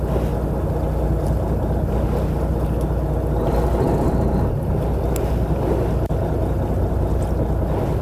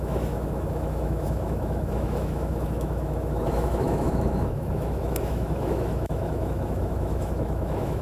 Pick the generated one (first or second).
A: second